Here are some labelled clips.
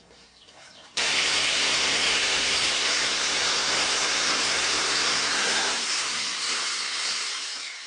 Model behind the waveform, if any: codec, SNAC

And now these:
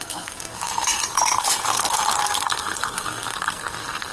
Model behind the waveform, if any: codec, SNAC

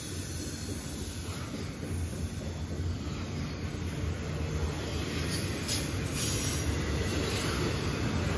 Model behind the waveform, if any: none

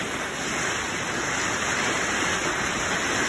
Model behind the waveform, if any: none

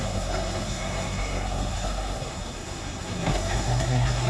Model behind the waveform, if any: codec, SNAC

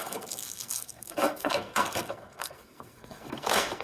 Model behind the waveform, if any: codec, SNAC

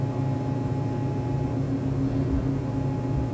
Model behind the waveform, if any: none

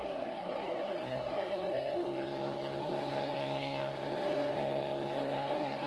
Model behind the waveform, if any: codec, SNAC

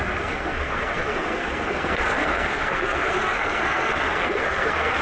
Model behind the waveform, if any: codec, SNAC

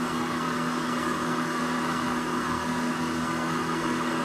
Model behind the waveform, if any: codec, SNAC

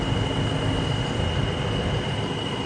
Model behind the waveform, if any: none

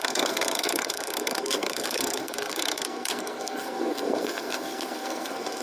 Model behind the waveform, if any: codec, SNAC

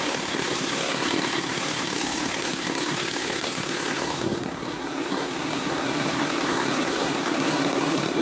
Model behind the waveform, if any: codec, SNAC